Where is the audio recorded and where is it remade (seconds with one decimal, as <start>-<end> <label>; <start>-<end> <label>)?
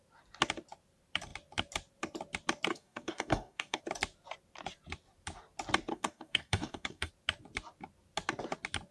0.0-2.7 recorded; 2.7-3.8 remade; 3.8-5.9 recorded; 5.9-7.1 remade; 7.1-8.9 recorded